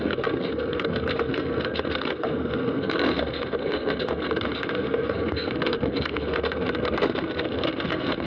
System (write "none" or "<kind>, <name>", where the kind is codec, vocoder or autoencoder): codec, SNAC